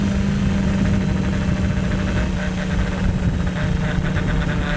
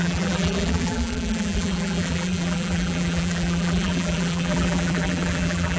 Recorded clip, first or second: first